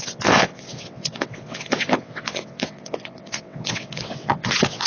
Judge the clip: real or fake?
fake